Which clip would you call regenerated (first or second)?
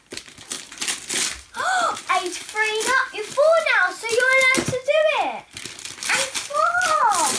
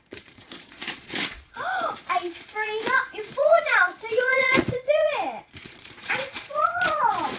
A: second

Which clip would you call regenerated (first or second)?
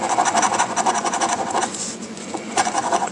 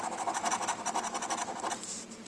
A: first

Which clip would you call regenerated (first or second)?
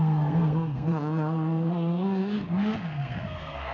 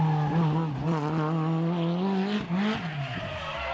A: first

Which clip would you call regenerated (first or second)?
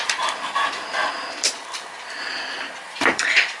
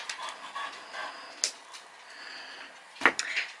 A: first